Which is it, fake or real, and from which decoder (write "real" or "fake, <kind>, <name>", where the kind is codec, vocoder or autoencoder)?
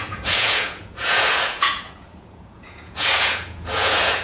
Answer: fake, vocoder, Vocos